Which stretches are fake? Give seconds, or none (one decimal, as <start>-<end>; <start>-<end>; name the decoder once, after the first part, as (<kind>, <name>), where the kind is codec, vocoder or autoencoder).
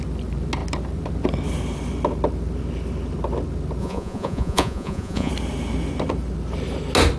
3.8-5.3 (vocoder, Vocos)